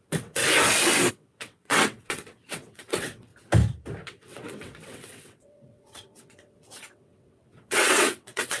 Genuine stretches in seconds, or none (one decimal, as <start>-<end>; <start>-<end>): 0.4-1.1; 3.3-4.0